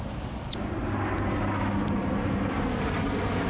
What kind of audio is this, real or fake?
real